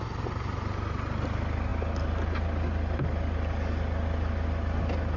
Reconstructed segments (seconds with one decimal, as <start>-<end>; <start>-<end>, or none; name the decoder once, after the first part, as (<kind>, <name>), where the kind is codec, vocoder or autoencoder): none